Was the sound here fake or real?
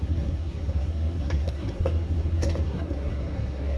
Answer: fake